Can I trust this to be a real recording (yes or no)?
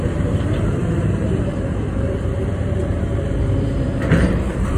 no